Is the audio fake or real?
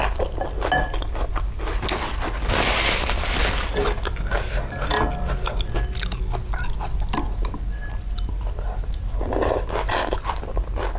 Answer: real